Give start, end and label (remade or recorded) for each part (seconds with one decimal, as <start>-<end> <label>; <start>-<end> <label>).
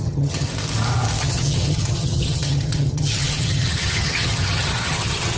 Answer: 0.0-0.5 remade; 0.5-1.2 recorded; 1.2-5.4 remade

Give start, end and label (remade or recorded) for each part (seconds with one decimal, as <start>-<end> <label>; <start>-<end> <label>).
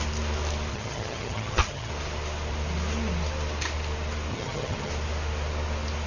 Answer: 0.0-0.7 recorded; 0.7-1.9 remade; 1.9-4.3 recorded; 4.3-4.9 remade; 4.9-6.1 recorded